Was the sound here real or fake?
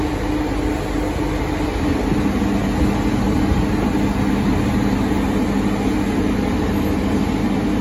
real